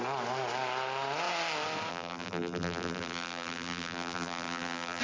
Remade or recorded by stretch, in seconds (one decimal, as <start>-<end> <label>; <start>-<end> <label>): 0.0-1.9 recorded; 1.9-5.0 remade